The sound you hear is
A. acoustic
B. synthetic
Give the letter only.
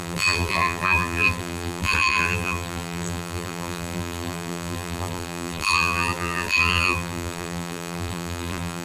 B